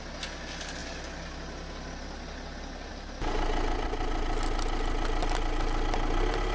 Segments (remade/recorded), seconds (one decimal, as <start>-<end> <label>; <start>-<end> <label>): 0.0-6.5 recorded